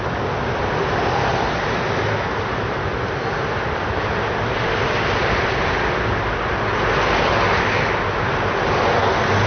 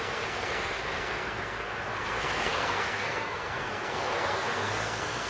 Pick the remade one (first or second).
second